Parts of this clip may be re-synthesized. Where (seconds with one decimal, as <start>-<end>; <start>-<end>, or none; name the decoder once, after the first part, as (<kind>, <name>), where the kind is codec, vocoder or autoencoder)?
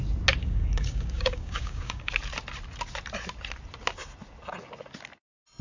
0.4-2.1 (codec, DAC)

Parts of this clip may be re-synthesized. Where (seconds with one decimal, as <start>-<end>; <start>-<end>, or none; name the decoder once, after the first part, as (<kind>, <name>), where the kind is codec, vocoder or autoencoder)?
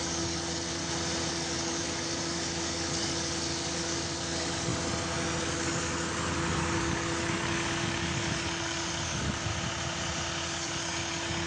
0.0-0.8 (codec, DAC); 1.3-4.7; 5.4-9.5; 10.5-11.5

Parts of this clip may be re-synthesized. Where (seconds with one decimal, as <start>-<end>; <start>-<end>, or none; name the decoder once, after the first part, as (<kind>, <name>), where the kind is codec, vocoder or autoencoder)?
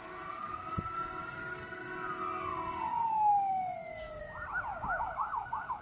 1.2-1.7 (codec, DAC); 2.5-4.2; 4.7-5.8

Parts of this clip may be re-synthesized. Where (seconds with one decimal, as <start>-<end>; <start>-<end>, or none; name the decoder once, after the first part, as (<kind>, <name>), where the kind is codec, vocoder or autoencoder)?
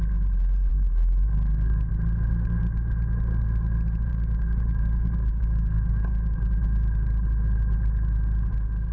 0.7-1.9 (codec, DAC); 4.1-6.4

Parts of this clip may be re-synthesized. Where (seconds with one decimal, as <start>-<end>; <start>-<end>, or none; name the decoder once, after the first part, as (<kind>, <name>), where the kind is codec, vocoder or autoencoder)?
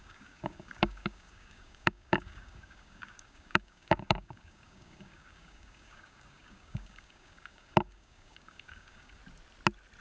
0.0-9.2 (codec, DAC)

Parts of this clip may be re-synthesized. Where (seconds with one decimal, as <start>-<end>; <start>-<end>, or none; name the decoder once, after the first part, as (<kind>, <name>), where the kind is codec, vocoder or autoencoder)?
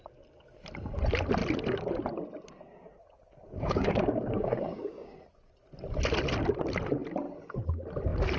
3.5-5.2 (codec, DAC)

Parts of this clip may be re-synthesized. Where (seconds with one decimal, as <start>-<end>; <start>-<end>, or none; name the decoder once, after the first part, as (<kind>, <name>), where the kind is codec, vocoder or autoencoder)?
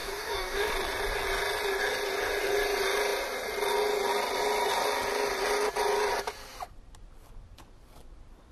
0.0-0.7 (codec, DAC)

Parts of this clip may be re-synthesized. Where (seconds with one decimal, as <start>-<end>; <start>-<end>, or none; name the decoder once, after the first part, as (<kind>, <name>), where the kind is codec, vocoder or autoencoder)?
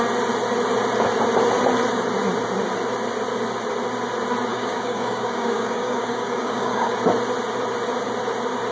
4.5-6.9 (codec, DAC)